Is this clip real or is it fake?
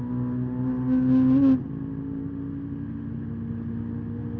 real